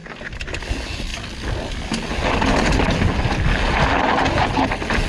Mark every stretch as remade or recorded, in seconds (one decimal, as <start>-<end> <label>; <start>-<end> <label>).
0.0-5.1 recorded